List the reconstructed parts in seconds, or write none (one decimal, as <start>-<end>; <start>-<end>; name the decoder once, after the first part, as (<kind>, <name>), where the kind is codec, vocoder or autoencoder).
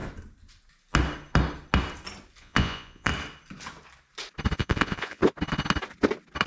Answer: 2.4-3.1 (vocoder, Vocos); 4.6-5.2